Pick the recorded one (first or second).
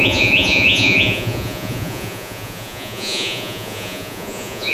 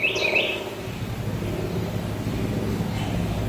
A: second